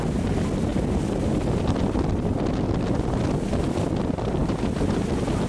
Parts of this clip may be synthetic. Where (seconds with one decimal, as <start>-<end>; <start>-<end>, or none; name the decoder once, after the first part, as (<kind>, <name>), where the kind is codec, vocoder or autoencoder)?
none